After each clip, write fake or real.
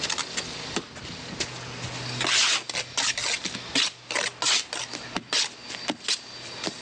real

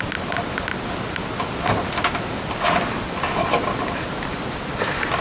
real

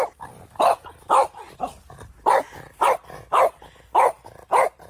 real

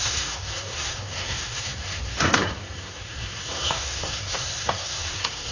fake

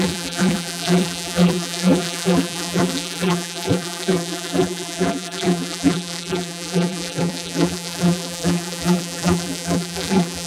fake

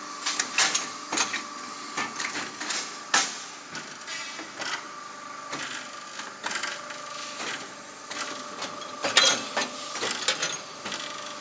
real